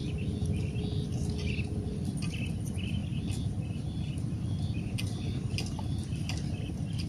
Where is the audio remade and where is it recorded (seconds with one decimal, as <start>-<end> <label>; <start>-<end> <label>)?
0.0-1.9 recorded; 1.9-7.1 remade